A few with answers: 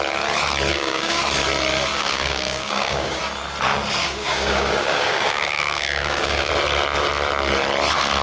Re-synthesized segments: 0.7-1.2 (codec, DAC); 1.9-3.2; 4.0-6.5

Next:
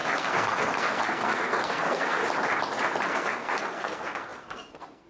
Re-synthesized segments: 0.0-2.2 (codec, SNAC); 3.0-5.1